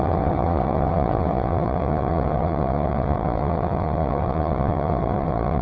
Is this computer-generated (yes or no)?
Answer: yes